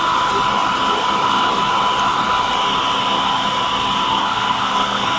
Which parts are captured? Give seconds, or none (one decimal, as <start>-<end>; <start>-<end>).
0.0-4.2